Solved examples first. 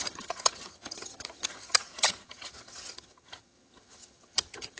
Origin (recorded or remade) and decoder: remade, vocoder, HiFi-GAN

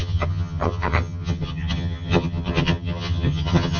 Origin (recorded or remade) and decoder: remade, vocoder, HiFi-GAN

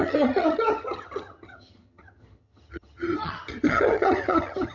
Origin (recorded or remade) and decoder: remade, vocoder, HiFi-GAN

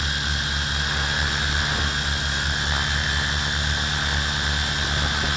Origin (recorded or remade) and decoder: recorded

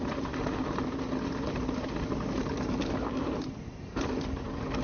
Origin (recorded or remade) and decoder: recorded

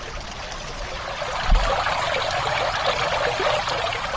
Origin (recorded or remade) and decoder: recorded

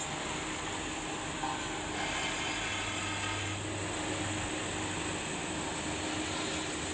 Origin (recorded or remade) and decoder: recorded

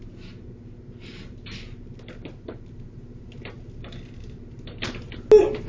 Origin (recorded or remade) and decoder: recorded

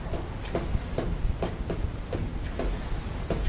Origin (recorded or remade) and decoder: recorded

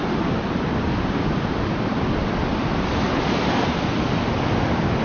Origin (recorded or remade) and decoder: recorded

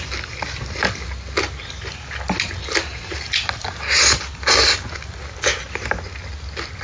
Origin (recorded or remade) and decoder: recorded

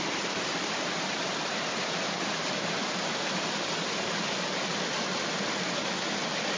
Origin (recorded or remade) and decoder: recorded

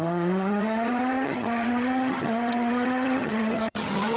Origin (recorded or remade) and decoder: remade, vocoder, HiFi-GAN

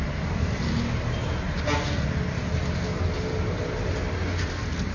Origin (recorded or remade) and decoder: recorded